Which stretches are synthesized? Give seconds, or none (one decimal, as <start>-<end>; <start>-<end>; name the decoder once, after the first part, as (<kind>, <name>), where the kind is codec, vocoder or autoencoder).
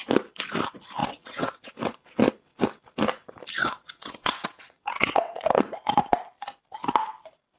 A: 1.0-1.7 (vocoder, WaveNeXt); 3.6-5.7